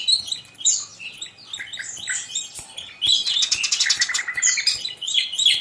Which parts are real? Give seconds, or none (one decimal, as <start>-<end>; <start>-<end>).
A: 0.0-5.6